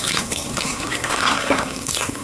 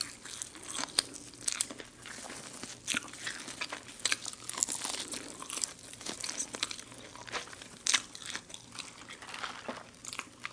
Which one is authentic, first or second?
second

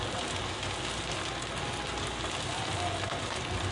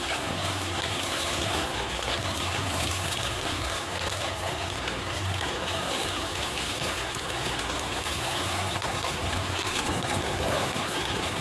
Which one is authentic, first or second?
first